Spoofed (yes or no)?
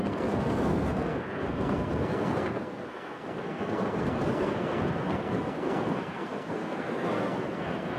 yes